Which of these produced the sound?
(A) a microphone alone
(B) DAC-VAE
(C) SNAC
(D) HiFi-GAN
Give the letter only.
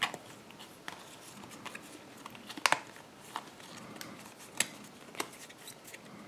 A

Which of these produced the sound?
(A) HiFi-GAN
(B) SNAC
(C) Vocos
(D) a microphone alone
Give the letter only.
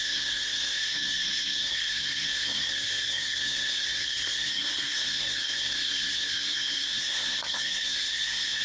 B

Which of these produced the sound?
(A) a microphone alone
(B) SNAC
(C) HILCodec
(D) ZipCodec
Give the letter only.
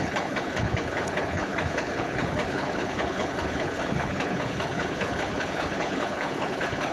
C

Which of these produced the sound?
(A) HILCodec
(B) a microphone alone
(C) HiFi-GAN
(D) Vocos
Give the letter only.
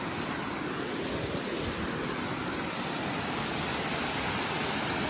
B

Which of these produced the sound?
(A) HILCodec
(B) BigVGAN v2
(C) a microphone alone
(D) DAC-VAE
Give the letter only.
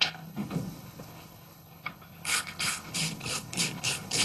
A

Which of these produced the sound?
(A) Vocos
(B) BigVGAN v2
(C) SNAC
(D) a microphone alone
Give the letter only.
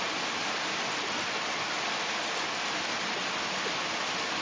B